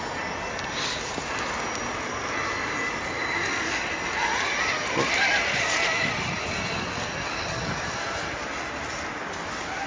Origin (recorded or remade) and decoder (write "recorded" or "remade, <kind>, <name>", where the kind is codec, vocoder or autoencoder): recorded